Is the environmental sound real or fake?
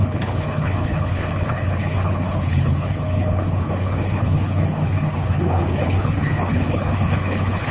fake